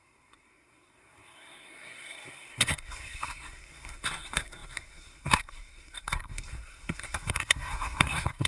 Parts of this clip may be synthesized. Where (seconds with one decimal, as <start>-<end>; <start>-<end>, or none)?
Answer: 0.0-8.5